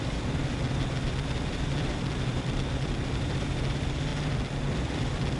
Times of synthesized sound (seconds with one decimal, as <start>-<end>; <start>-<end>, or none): 0.0-4.1; 4.7-5.4